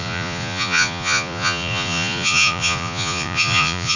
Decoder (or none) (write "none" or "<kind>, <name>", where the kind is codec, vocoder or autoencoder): vocoder, Vocos